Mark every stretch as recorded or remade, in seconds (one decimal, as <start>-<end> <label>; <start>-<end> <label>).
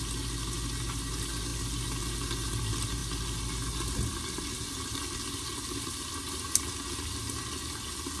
0.0-8.2 recorded